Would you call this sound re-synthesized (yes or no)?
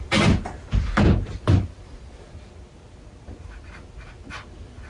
no